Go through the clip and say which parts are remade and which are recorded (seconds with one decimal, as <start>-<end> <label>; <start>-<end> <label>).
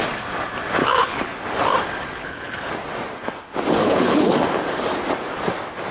0.0-0.8 recorded; 0.8-1.3 remade; 1.3-2.2 recorded; 2.2-2.7 remade; 2.7-3.8 recorded; 3.8-4.4 remade; 4.4-5.9 recorded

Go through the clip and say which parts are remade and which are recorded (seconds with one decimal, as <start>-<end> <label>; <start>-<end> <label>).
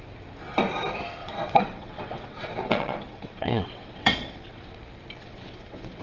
0.0-1.2 recorded; 1.2-4.8 remade; 4.8-5.2 recorded; 5.2-6.0 remade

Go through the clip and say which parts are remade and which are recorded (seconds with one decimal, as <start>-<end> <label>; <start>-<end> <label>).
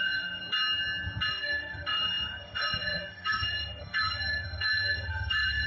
0.0-0.4 remade; 0.4-1.3 recorded; 1.3-5.7 remade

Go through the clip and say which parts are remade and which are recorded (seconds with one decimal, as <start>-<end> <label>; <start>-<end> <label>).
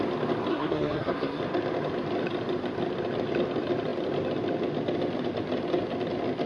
0.0-0.5 recorded; 0.5-1.4 remade; 1.4-6.5 recorded